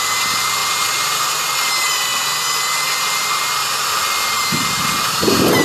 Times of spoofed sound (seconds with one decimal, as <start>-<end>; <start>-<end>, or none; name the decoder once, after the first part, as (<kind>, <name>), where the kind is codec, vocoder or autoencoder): none